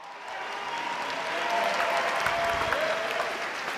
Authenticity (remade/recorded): recorded